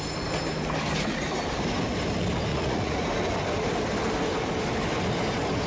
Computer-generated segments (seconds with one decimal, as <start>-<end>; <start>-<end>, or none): 2.5-3.1